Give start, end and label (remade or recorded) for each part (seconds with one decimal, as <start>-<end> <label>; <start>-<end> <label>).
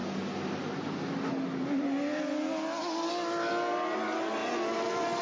0.0-5.2 recorded